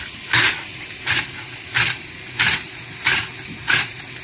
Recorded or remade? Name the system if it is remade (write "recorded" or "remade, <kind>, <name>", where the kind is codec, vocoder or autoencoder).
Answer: recorded